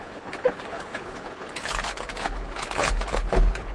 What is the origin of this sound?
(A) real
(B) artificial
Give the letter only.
B